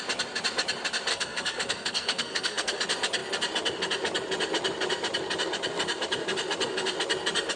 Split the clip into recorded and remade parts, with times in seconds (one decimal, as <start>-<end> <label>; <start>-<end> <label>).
0.0-1.1 recorded; 1.1-2.8 remade; 2.8-7.6 recorded